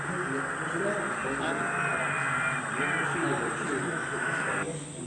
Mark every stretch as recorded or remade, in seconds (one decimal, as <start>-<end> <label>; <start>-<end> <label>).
0.0-3.8 recorded; 3.8-4.5 remade; 4.5-5.1 recorded